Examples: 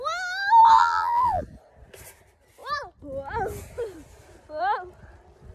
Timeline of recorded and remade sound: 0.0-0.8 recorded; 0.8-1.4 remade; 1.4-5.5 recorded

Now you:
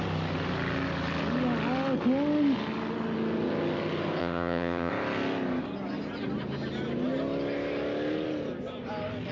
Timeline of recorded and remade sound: 0.0-4.2 recorded; 4.2-4.9 remade; 4.9-9.3 recorded

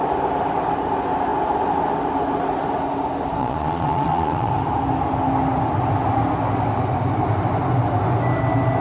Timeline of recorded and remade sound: 0.0-3.4 recorded; 3.4-4.5 remade; 4.5-8.8 recorded